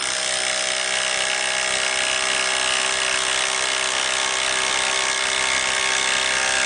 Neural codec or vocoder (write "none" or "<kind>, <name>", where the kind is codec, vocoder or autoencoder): none